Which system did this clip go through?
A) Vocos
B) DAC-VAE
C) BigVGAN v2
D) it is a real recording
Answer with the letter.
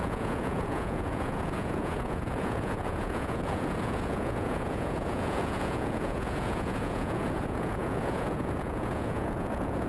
A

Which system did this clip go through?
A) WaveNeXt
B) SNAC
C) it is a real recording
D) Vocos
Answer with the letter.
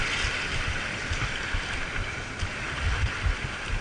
C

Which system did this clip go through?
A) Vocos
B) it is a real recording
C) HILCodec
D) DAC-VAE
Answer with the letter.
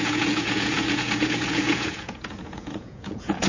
A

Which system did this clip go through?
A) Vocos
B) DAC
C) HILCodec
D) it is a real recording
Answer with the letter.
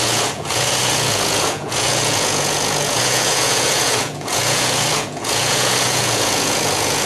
A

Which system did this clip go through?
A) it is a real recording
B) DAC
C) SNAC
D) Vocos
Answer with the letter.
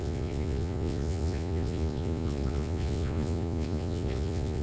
D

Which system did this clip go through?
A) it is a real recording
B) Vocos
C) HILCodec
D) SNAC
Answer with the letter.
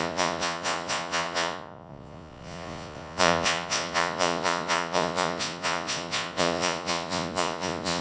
B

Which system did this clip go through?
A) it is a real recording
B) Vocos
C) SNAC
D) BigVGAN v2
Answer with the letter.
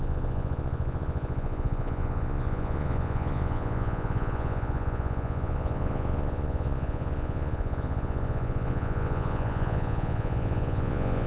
B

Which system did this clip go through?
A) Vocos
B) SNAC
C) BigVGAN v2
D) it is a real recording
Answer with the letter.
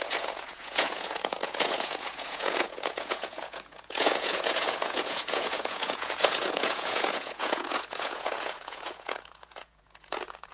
A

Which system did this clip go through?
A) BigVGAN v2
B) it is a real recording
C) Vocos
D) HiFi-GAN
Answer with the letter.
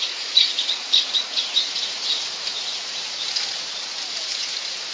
C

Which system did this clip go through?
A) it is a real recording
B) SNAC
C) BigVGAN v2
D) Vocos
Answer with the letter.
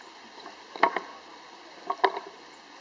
A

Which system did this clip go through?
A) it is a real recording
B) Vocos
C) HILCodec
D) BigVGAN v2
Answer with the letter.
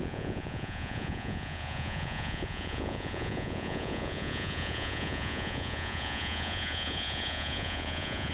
B